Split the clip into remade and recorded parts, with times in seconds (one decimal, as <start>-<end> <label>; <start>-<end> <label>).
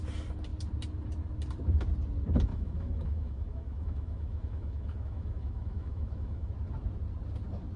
0.0-2.5 recorded; 2.5-6.5 remade; 6.5-7.8 recorded